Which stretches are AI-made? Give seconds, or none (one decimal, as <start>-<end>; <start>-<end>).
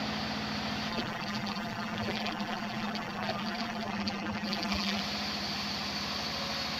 0.9-5.0